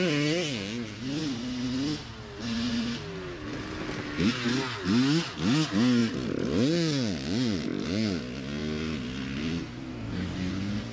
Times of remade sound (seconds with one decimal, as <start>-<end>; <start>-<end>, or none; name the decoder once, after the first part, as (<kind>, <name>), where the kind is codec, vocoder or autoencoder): 9.9-10.5 (codec, DAC)